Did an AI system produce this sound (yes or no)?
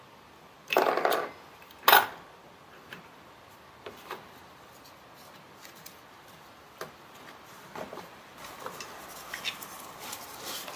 no